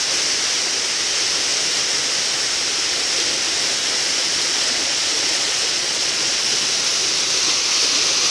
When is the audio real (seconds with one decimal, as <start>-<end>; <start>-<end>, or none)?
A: 0.0-4.2; 6.4-8.3